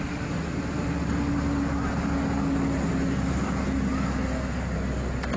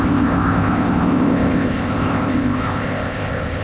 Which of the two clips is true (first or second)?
first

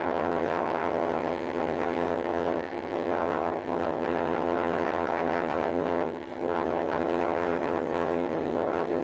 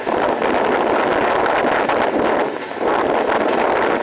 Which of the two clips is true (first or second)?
second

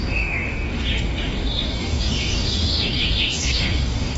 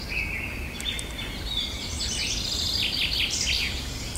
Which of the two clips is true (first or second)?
second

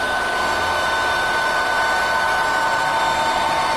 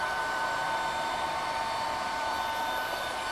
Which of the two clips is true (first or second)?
first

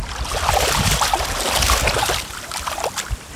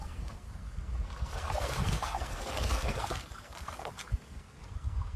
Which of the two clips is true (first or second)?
first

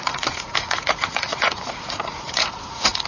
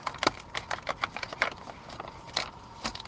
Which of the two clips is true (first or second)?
second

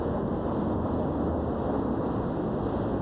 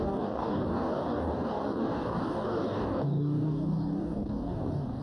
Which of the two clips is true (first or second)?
first